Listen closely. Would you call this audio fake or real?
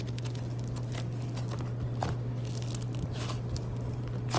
real